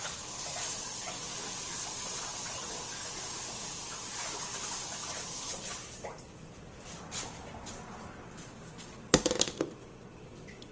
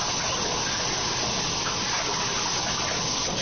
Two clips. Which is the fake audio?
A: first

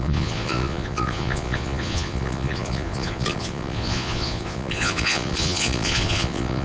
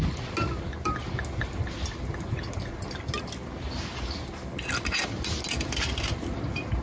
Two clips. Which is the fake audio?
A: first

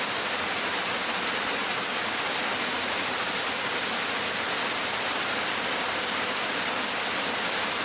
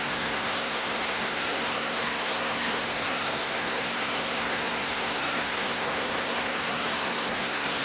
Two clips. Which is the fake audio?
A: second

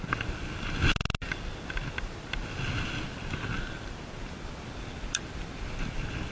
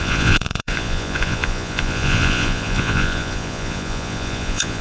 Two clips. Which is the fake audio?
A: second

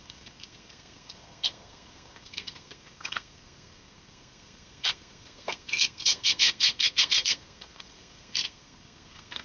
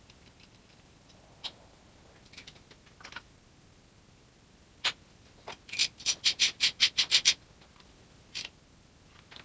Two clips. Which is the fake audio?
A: first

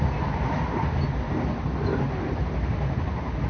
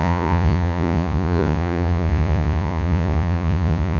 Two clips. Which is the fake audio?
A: second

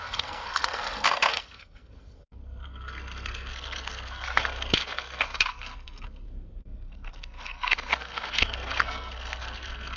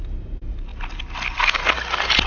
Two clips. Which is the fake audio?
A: first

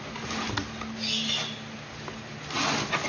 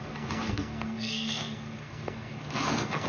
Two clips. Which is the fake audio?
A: second